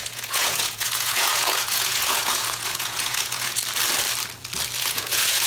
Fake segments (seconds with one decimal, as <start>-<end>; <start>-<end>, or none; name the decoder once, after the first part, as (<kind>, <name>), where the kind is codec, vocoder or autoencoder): 0.0-3.6 (vocoder, Vocos); 4.8-5.5